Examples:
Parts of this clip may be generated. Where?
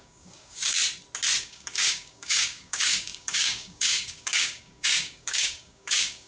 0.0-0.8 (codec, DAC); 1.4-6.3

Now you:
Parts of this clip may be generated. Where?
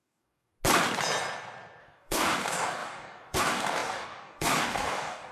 0.0-0.5 (codec, DAC); 1.8-5.3